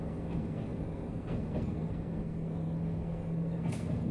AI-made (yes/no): yes